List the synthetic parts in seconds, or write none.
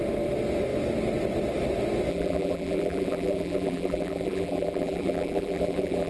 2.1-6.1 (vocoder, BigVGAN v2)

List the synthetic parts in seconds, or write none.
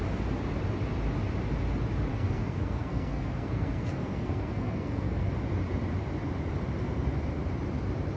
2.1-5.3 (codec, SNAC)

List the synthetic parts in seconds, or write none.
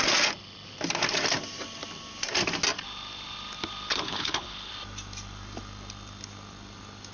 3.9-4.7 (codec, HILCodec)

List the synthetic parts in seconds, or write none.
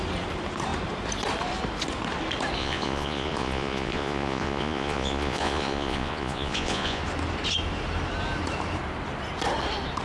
2.6-7.0 (vocoder, Vocos)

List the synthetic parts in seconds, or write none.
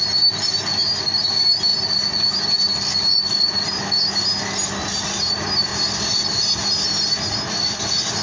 none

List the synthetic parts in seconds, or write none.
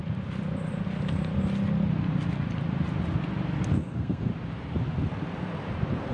3.7-4.3 (codec, SNAC)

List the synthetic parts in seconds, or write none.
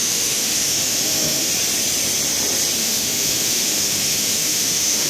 0.0-1.5 (autoencoder, DAC-VAE); 2.8-5.1